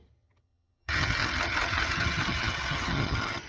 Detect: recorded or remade remade